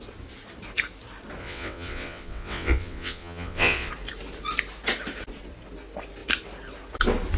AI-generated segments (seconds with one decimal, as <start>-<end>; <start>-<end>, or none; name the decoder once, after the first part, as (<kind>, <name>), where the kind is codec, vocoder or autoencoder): 1.4-3.9 (vocoder, WaveNeXt)